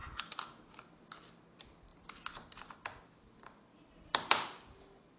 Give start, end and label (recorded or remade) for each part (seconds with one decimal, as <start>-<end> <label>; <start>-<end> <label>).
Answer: 0.0-5.2 recorded